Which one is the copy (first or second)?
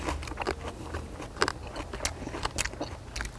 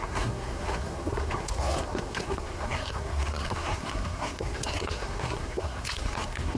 second